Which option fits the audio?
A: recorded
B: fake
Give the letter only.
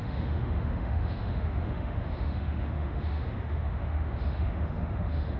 B